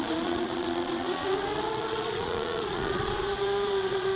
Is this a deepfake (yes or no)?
yes